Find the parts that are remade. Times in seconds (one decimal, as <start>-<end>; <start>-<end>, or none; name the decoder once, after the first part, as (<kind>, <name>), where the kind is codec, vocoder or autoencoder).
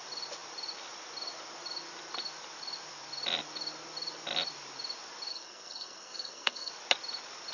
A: 5.3-6.7 (codec, SNAC)